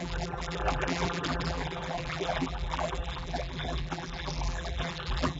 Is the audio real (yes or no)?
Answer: no